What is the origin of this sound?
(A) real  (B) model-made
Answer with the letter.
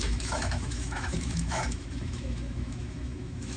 B